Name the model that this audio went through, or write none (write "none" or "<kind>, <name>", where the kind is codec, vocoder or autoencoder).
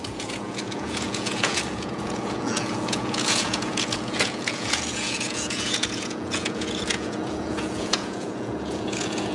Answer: vocoder, Vocos